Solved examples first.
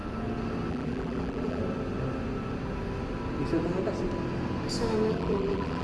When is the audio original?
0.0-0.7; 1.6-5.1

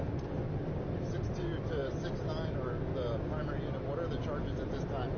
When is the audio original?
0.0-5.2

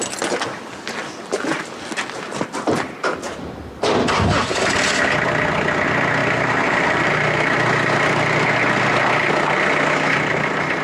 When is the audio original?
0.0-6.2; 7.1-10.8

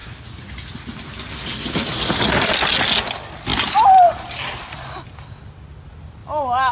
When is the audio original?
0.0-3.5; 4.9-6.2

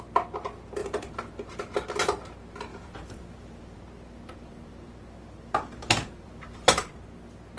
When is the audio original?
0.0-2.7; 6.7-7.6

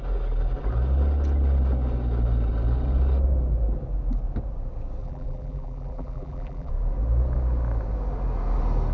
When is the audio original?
0.0-5.0; 6.7-8.9